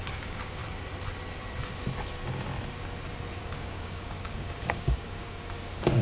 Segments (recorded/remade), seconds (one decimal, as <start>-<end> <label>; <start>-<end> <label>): 0.0-0.6 remade; 0.6-3.4 recorded; 3.4-6.0 remade